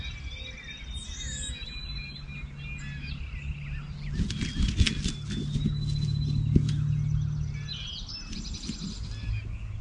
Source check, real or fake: real